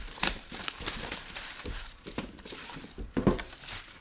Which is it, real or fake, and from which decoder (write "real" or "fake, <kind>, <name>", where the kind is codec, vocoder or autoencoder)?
fake, vocoder, BigVGAN v2